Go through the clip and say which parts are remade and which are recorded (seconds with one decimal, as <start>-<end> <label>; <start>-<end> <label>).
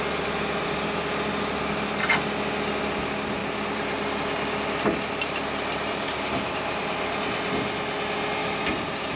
0.0-3.4 recorded; 3.4-4.2 remade; 4.2-8.4 recorded; 8.4-9.2 remade